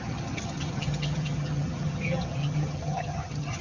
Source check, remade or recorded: remade